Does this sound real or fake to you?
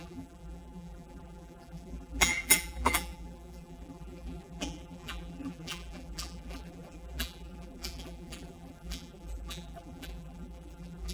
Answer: fake